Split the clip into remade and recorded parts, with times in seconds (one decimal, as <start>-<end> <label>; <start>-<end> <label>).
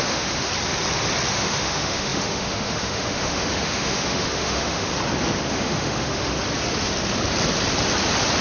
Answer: 0.0-0.5 remade; 0.5-1.3 recorded; 1.3-4.9 remade; 4.9-5.5 recorded; 5.5-6.3 remade; 6.3-8.4 recorded